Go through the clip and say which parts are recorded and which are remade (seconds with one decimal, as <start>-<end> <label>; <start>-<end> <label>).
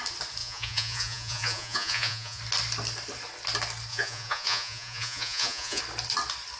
0.0-0.4 recorded; 0.4-2.4 remade; 2.4-3.9 recorded; 3.9-5.8 remade; 5.8-6.6 recorded